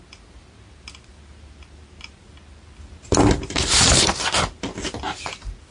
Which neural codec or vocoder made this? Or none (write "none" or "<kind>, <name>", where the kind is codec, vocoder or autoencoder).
none